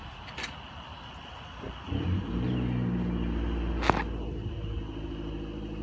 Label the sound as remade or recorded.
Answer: recorded